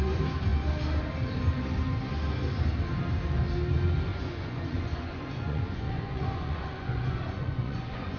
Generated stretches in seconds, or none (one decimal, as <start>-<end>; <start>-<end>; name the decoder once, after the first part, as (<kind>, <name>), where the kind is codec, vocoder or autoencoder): 4.1-8.2 (vocoder, Vocos)